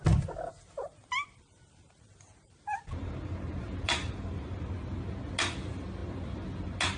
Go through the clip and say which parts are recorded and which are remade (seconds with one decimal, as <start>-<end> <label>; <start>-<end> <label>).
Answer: 0.0-0.5 recorded; 0.5-4.5 remade; 4.5-7.0 recorded